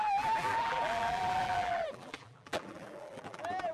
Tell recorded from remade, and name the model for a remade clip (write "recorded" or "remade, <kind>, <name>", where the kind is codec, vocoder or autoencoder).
remade, vocoder, BigVGAN v2